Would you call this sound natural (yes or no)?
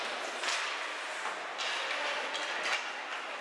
yes